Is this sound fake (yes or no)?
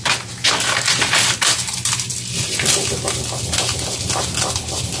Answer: no